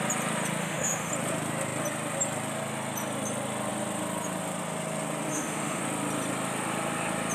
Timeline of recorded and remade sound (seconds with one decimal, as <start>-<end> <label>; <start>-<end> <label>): 0.0-0.6 recorded; 0.6-1.1 remade; 1.1-5.3 recorded; 5.3-5.8 remade; 5.8-7.3 recorded

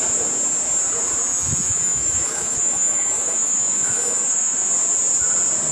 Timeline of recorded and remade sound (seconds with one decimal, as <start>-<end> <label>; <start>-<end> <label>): 0.0-1.3 recorded; 1.3-4.7 remade; 4.7-5.7 recorded

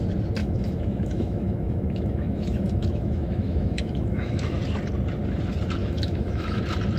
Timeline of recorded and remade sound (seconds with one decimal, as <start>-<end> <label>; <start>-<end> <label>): 0.0-0.4 recorded; 0.4-4.6 remade; 4.6-5.8 recorded; 5.8-6.6 remade; 6.6-7.0 recorded

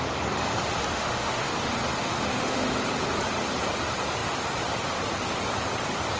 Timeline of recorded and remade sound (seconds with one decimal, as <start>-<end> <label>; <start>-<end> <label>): 0.0-0.9 recorded; 0.9-1.5 remade; 1.5-2.0 recorded; 2.0-2.7 remade; 2.7-6.2 recorded